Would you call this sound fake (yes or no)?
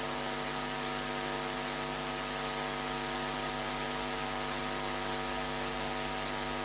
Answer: no